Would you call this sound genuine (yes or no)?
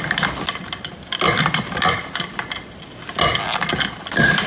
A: yes